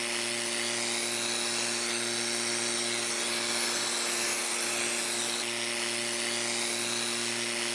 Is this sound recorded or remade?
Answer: recorded